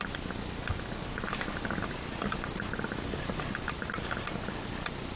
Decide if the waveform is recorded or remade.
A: recorded